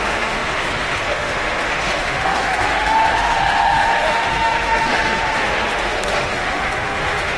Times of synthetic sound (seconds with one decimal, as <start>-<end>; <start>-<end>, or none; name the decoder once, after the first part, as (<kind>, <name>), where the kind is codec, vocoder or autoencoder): 0.0-7.4 (autoencoder, DAC-VAE)